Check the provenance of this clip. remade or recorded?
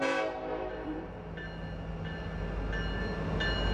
recorded